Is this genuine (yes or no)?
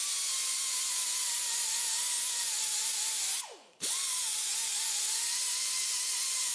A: no